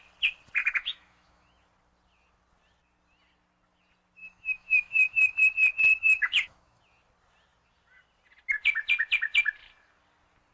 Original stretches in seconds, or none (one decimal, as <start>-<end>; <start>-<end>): 0.0-0.6; 1.6-4.2; 5.5-5.9; 6.8-10.5